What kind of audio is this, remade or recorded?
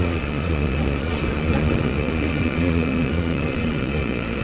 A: remade